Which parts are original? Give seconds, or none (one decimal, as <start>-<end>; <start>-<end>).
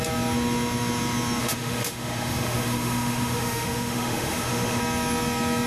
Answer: 0.0-1.4; 4.8-5.7